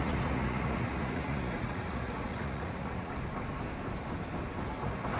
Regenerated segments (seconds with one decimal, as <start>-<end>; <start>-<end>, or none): 0.0-3.1